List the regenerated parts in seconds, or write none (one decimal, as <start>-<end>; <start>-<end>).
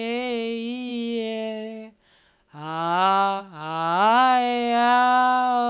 0.0-5.7